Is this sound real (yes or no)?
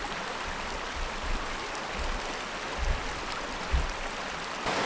yes